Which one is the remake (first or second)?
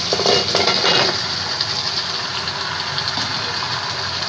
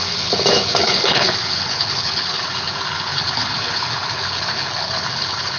second